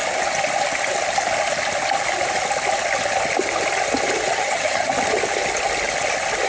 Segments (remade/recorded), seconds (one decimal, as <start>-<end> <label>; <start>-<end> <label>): 0.0-4.3 recorded; 4.3-4.9 remade; 4.9-6.5 recorded